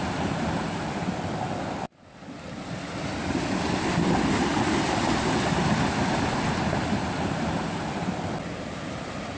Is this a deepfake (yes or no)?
no